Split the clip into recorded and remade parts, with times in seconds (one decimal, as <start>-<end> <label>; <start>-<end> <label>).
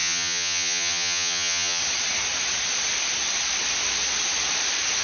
0.0-1.8 remade; 1.8-5.0 recorded